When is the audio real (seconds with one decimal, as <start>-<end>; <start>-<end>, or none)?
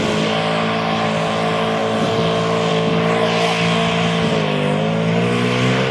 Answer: 0.0-5.9